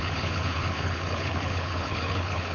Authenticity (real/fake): fake